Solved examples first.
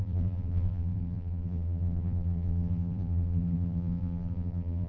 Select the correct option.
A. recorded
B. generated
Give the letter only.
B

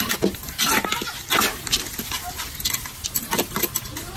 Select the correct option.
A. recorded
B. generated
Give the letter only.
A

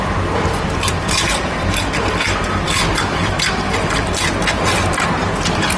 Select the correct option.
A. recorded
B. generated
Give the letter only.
B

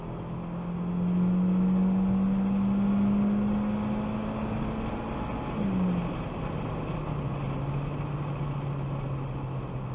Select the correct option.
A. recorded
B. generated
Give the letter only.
A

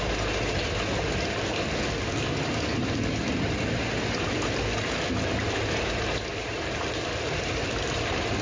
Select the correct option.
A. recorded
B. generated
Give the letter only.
A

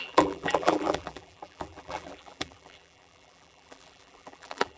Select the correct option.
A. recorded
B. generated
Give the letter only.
B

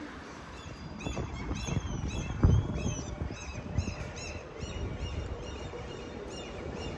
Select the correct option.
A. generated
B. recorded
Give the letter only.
A